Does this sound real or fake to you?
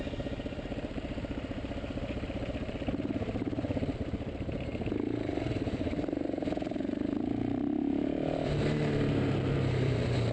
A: fake